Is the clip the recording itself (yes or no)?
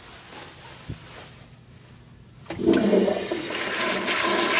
yes